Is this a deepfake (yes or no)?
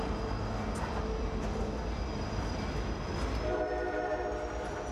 no